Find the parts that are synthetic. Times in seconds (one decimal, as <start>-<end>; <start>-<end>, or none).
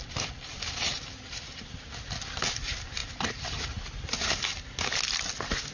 none